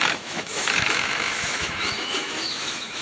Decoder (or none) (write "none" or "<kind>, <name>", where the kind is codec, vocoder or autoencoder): autoencoder, DAC-VAE